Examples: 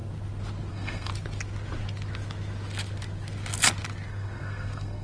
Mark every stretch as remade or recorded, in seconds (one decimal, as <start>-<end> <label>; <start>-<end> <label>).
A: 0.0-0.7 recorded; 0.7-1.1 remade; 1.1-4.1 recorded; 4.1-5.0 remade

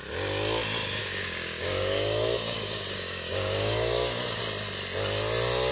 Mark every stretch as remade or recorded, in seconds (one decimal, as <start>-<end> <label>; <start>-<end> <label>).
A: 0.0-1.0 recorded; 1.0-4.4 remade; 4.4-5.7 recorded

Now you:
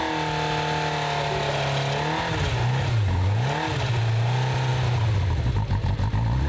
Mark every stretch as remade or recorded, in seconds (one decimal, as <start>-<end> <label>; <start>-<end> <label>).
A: 0.0-6.5 recorded

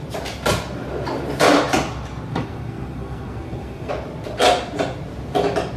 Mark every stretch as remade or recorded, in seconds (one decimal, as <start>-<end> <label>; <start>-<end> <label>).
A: 0.0-2.3 recorded; 2.3-3.9 remade; 3.9-5.8 recorded

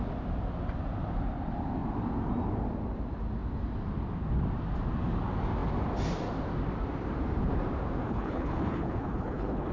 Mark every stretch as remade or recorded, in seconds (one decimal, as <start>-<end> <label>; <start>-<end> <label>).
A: 0.0-8.0 recorded; 8.0-9.7 remade